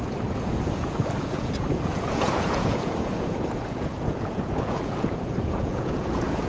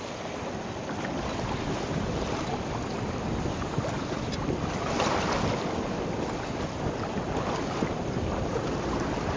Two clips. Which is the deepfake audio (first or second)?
first